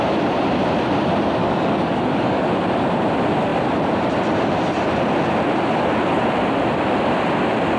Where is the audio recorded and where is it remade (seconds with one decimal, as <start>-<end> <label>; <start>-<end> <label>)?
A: 0.0-1.4 recorded; 1.4-2.5 remade; 2.5-7.8 recorded